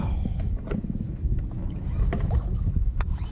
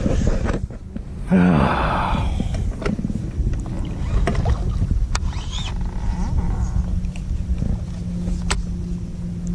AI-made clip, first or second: first